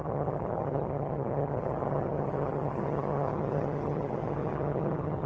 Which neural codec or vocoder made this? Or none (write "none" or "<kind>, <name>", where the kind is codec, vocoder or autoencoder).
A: vocoder, HiFi-GAN